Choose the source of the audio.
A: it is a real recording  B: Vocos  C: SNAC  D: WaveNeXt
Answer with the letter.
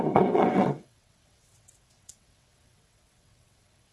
D